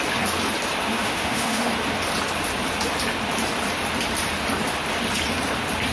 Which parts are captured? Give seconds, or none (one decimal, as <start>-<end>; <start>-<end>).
0.0-0.9; 1.7-5.9